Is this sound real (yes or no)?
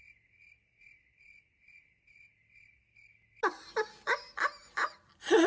yes